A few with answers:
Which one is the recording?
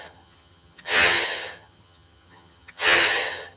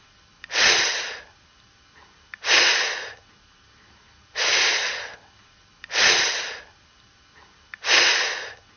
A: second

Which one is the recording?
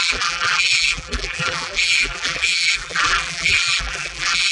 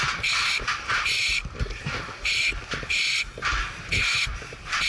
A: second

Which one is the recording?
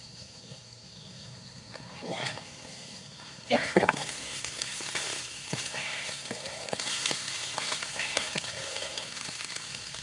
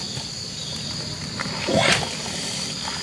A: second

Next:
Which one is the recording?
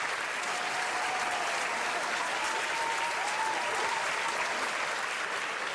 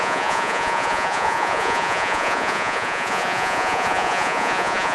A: first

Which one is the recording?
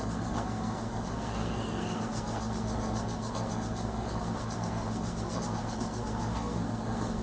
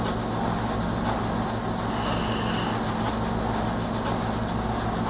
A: second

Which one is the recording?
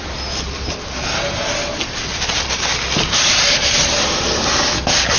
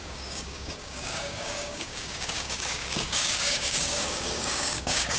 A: first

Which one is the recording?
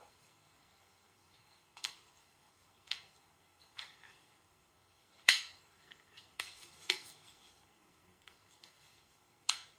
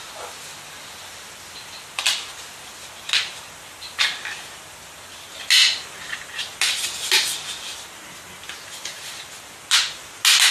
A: second